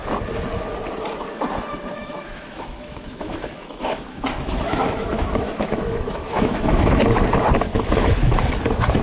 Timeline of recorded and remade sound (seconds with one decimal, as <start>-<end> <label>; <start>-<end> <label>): 0.0-2.0 recorded; 2.0-7.0 remade; 7.0-7.7 recorded; 7.7-8.5 remade; 8.5-9.0 recorded